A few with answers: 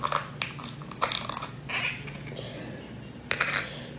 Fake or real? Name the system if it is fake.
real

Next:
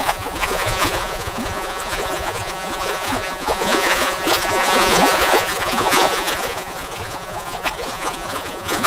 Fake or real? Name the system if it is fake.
fake, vocoder, Vocos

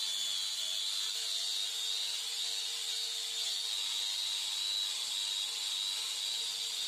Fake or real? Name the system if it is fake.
real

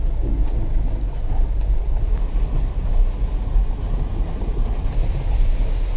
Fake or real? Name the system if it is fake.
real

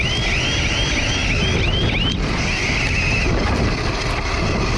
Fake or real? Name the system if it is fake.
real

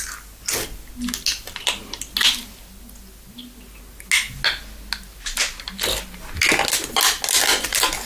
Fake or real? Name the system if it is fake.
real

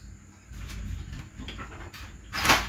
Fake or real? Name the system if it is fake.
real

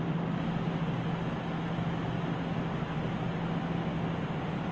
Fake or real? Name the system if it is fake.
real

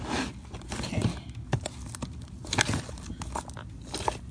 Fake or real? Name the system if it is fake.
real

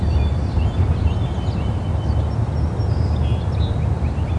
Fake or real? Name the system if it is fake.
real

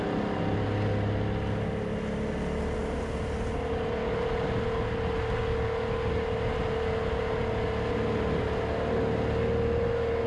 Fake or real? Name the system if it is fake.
real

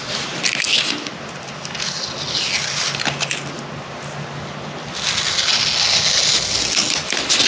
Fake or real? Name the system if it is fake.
real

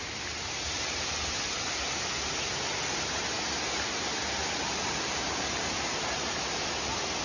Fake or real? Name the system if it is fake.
real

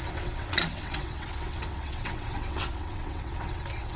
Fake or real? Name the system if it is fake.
fake, vocoder, WaveNeXt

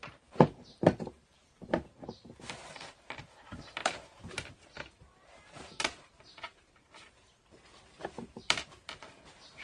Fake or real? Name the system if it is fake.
fake, vocoder, BigVGAN v2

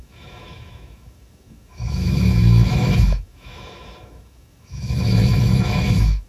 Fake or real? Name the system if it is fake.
fake, autoencoder, DAC-VAE